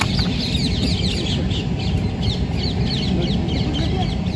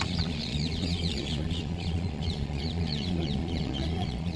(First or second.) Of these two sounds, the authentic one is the first